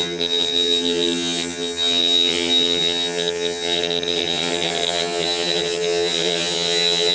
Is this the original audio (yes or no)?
no